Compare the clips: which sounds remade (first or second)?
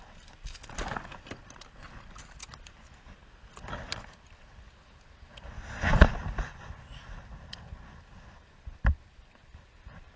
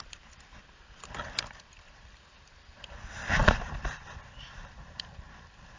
second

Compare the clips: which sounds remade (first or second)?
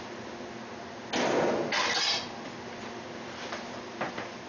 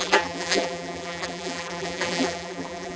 second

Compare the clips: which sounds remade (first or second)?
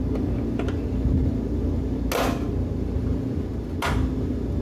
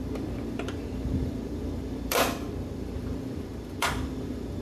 second